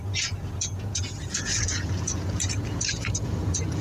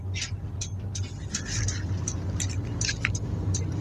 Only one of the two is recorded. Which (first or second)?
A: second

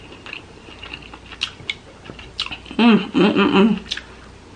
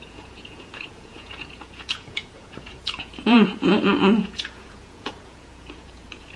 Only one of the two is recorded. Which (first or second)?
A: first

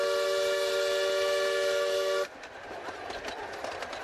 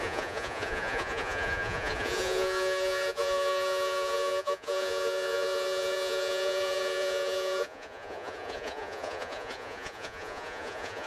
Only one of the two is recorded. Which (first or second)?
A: first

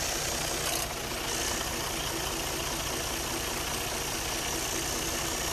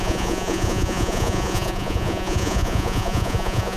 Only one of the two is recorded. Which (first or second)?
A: first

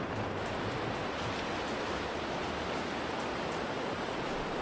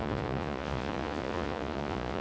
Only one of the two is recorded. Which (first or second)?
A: first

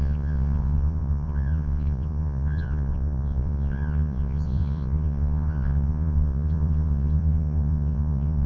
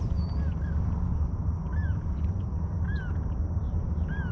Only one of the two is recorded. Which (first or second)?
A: second